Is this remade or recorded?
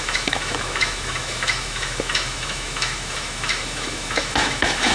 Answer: remade